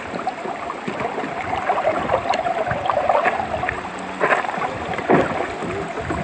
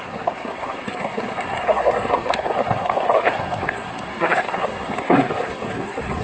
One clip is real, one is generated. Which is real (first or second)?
first